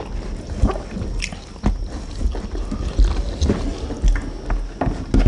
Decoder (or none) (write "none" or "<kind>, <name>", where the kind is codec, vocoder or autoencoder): none